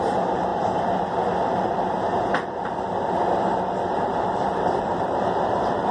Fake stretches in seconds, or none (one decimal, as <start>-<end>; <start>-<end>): 0.0-0.5; 4.0-5.9